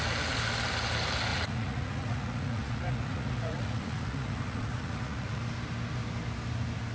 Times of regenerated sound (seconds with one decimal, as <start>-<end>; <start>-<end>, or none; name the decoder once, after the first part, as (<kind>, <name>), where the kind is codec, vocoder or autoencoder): 1.3-5.4 (vocoder, Vocos)